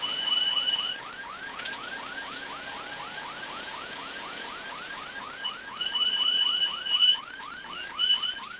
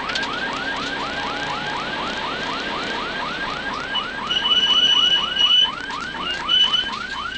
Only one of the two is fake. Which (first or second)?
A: first